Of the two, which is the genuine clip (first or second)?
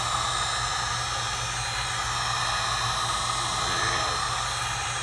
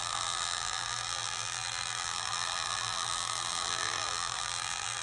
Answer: first